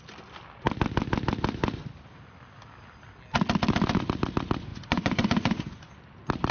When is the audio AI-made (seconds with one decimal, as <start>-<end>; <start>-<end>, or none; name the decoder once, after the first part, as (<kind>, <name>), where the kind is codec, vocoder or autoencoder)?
4.7-5.9 (vocoder, Vocos)